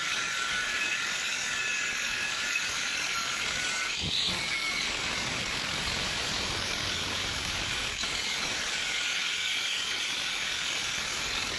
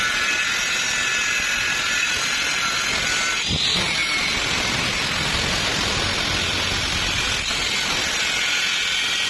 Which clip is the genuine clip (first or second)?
second